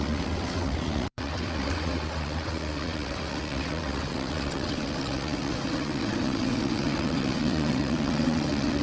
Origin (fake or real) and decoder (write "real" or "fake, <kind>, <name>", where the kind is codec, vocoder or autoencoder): fake, vocoder, WaveNeXt